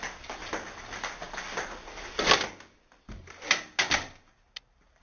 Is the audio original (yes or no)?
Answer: yes